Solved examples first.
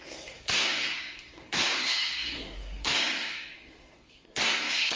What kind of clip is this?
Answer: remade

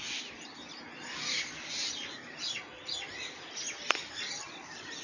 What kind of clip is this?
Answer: recorded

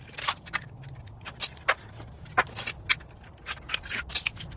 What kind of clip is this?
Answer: recorded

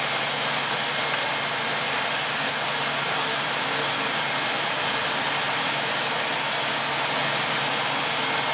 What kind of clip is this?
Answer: recorded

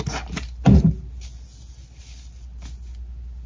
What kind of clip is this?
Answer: recorded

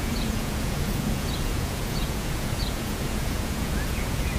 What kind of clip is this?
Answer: remade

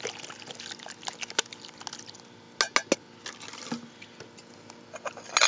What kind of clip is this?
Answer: recorded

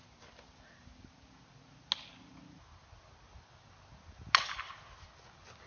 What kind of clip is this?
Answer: recorded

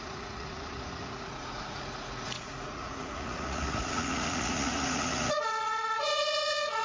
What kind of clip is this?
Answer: remade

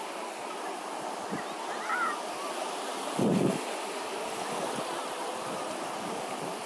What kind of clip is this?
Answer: recorded